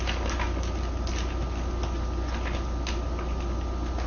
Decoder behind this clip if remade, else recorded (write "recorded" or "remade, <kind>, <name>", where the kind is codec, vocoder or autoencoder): recorded